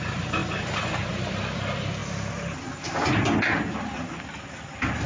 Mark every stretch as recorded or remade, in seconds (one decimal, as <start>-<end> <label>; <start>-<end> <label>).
0.0-5.1 recorded